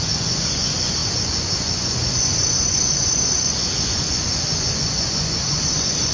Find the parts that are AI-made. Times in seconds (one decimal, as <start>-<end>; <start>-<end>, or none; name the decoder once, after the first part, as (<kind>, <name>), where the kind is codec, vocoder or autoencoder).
0.0-6.1 (vocoder, Vocos)